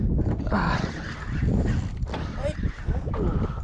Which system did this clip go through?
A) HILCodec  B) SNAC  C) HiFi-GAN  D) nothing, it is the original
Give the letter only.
D